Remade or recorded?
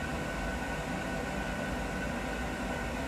recorded